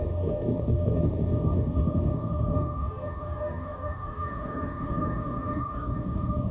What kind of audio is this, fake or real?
fake